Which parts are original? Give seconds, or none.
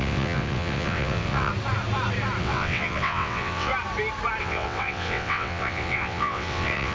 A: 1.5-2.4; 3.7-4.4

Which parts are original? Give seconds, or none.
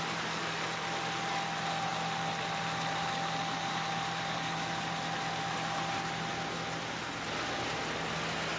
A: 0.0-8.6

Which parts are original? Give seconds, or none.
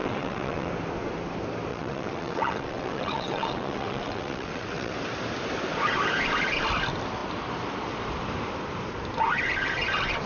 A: 0.7-1.7; 4.9-10.3